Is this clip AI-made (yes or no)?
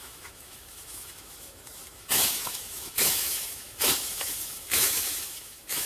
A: yes